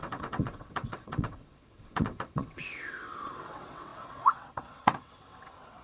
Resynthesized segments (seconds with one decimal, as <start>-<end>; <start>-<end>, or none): 0.0-5.8